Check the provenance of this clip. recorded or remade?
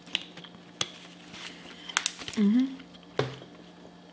recorded